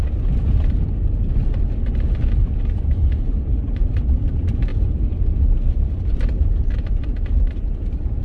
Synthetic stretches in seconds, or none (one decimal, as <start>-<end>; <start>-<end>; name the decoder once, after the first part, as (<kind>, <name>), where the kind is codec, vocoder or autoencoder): 3.0-4.2 (vocoder, BigVGAN v2); 4.7-8.2